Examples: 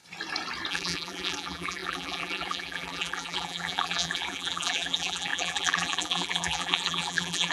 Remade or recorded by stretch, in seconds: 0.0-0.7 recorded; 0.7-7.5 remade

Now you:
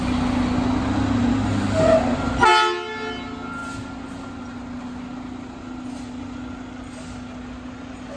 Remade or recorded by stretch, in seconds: 0.0-8.2 recorded